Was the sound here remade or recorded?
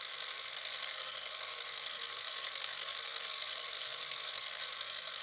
remade